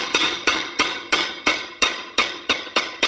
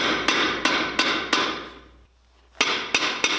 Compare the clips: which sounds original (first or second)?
second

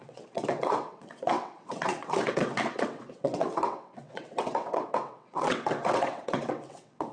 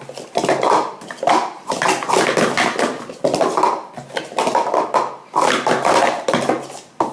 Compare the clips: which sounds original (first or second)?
second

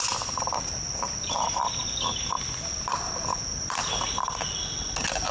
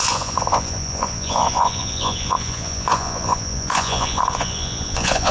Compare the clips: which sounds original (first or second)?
first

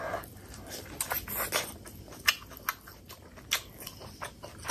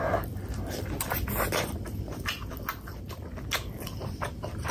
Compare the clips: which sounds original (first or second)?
first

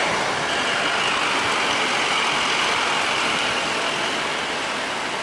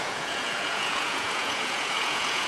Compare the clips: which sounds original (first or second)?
first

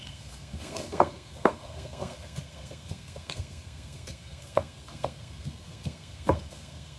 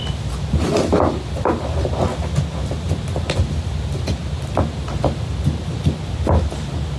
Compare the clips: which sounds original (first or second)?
second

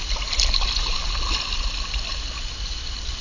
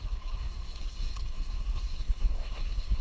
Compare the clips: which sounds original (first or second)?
first